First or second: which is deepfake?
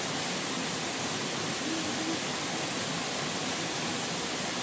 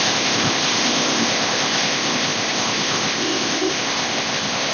second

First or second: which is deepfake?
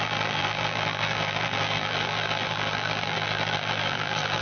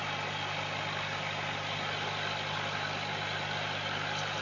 first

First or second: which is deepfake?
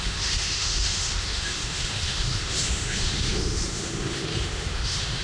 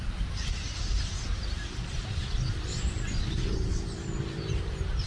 first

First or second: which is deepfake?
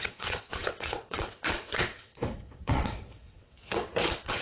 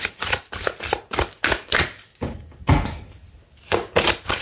first